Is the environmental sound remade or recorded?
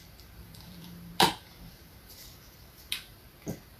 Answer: remade